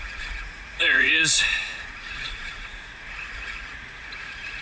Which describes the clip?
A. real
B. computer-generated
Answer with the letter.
B